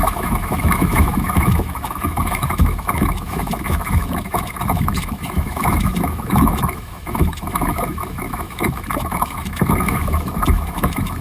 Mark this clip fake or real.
fake